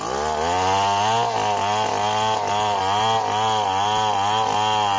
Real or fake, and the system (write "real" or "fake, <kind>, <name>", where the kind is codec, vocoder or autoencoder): real